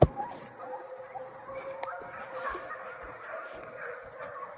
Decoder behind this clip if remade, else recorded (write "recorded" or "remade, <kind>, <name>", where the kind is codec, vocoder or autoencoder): recorded